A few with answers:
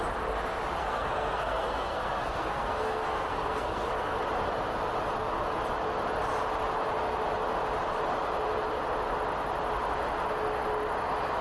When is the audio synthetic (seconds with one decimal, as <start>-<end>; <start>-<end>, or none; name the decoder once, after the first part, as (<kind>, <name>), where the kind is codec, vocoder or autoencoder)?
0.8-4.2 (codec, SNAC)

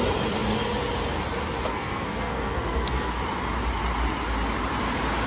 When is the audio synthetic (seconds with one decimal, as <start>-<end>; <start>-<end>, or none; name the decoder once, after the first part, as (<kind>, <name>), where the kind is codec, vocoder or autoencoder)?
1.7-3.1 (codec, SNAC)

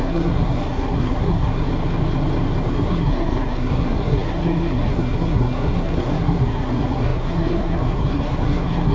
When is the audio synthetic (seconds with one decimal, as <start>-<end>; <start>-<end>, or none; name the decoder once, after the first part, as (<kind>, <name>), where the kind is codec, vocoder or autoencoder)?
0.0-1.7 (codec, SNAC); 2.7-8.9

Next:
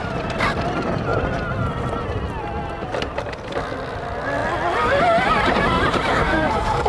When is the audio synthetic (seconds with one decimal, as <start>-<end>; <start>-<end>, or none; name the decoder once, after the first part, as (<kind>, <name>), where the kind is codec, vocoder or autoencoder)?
6.1-6.9 (codec, SNAC)